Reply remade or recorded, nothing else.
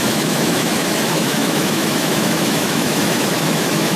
remade